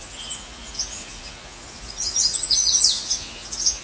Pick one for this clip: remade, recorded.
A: remade